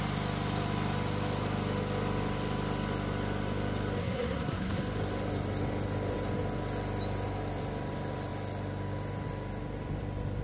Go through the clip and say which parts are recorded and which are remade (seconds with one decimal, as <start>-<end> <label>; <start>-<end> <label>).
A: 0.0-4.0 recorded; 4.0-4.8 remade; 4.8-10.4 recorded